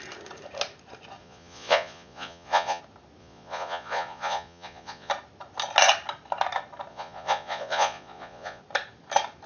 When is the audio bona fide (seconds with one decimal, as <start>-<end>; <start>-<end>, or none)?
0.0-1.2; 2.8-3.2; 5.1-6.9; 8.6-9.5